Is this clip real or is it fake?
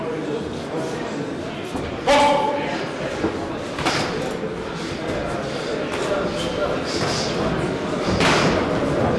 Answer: real